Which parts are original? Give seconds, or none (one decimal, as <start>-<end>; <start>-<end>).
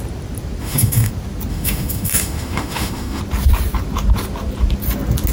0.0-0.6; 1.1-1.5; 3.2-5.3